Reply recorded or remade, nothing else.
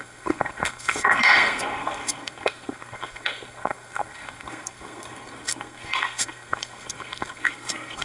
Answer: remade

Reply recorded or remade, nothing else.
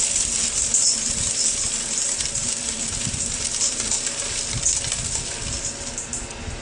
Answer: recorded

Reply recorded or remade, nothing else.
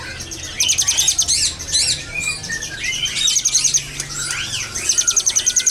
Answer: recorded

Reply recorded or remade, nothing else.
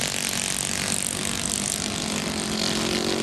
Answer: recorded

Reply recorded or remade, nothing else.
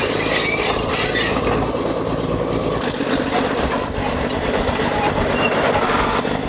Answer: recorded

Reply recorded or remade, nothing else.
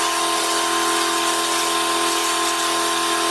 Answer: recorded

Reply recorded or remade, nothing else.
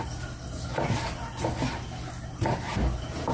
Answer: recorded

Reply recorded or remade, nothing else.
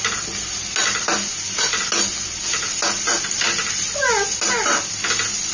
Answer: recorded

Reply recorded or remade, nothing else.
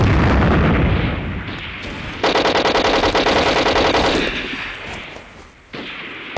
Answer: recorded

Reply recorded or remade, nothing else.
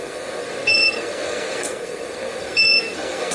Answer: remade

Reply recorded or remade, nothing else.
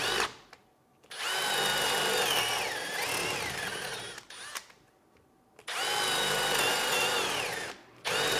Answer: recorded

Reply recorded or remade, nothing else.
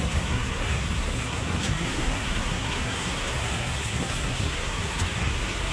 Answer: remade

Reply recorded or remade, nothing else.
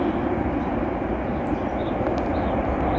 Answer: recorded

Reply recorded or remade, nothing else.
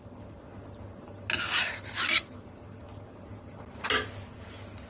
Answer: recorded